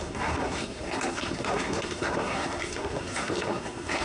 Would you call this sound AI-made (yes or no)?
yes